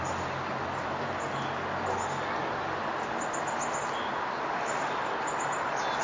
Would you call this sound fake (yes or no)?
no